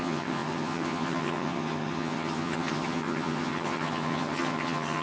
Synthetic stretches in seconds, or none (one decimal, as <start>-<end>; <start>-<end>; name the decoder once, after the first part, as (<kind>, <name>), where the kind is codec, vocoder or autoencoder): 0.0-5.0 (vocoder, HiFi-GAN)